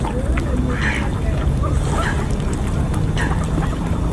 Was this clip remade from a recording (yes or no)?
no